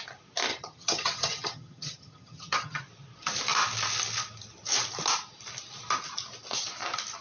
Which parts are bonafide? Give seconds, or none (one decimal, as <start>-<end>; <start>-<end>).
0.0-0.5; 2.8-7.2